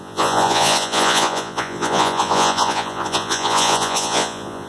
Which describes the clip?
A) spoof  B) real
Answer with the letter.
A